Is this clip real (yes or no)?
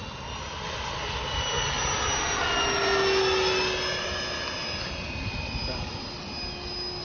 yes